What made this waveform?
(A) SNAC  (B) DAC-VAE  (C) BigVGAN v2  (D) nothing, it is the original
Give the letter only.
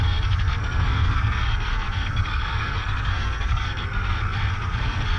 A